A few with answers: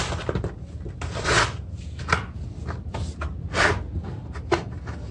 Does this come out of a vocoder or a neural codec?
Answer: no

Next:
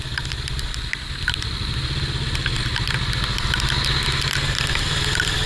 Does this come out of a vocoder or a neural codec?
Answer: no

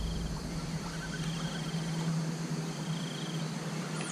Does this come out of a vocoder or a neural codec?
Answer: no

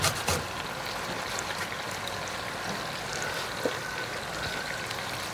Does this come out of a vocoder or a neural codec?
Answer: no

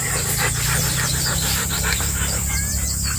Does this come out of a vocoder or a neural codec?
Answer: yes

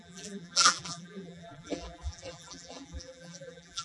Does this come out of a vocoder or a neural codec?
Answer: yes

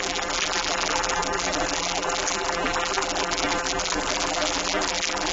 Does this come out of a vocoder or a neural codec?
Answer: yes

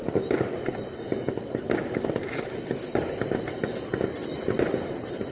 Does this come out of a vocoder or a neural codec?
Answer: no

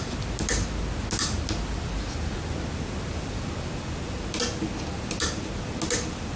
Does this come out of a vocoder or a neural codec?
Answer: no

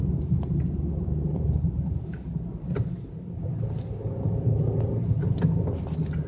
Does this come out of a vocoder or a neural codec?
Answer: no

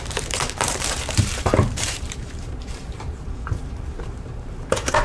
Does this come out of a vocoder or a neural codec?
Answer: yes